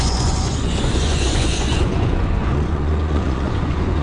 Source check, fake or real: fake